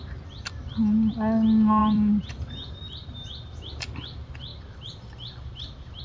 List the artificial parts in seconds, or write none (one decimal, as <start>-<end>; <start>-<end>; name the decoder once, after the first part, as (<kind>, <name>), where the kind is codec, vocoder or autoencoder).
1.8-2.5 (vocoder, BigVGAN v2); 3.0-3.7; 4.5-6.0